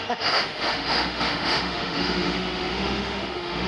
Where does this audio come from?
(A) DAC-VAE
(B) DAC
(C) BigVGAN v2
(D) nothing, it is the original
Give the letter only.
A